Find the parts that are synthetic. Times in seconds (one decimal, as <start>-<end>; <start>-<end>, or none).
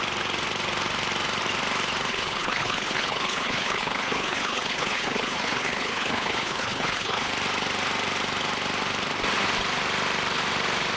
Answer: 2.1-7.3